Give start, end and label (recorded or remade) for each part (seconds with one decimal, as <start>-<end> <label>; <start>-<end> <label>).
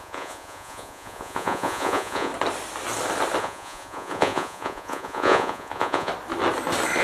0.0-2.3 remade; 2.3-3.4 recorded; 3.4-6.1 remade; 6.1-7.0 recorded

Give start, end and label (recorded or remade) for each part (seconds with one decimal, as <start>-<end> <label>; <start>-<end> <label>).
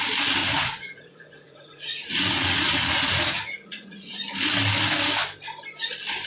0.0-0.4 recorded; 0.4-4.2 remade; 4.2-6.3 recorded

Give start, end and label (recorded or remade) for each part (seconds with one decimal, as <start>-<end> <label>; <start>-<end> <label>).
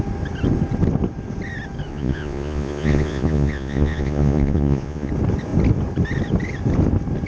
0.0-1.9 recorded; 1.9-5.1 remade; 5.1-7.3 recorded